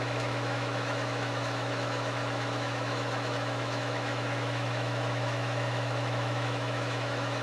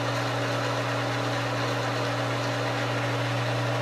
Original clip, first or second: second